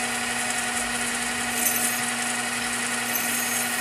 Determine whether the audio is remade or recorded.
recorded